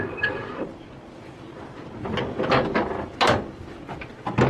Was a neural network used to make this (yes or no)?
no